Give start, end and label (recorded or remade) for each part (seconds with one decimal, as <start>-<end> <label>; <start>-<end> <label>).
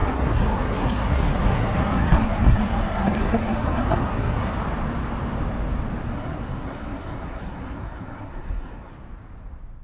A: 0.0-4.5 remade; 4.5-6.1 recorded; 6.1-8.9 remade; 8.9-9.8 recorded